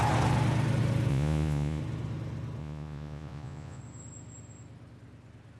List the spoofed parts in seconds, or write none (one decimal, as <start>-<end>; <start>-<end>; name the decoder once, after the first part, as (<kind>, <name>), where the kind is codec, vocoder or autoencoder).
1.1-1.8 (vocoder, Vocos); 2.6-3.8